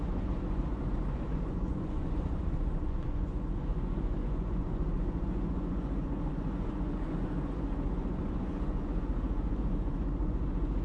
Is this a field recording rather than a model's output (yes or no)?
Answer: no